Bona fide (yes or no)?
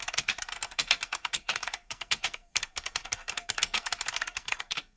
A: no